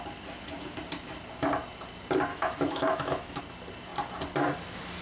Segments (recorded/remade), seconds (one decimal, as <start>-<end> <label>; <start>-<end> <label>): 0.0-2.3 recorded; 2.3-3.4 remade; 3.4-5.0 recorded

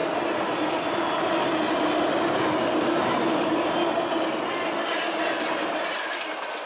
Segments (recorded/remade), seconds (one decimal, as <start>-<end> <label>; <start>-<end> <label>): 0.0-6.7 recorded

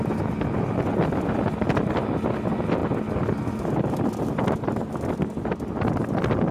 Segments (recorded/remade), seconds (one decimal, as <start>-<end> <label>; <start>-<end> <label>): 0.0-6.5 recorded

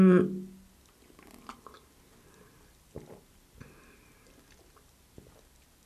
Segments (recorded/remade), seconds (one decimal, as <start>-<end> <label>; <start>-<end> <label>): 0.0-5.9 recorded

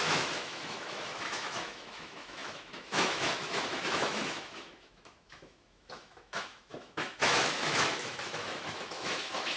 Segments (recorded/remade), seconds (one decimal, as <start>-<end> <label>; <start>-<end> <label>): 0.0-9.6 remade

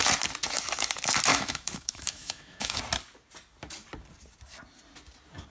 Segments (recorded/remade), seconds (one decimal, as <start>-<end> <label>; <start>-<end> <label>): 0.0-1.3 recorded; 1.3-2.8 remade; 2.8-5.5 recorded